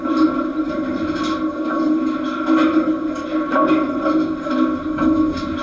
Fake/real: real